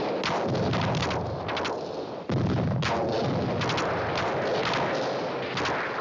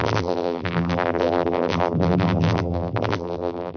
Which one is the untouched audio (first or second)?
first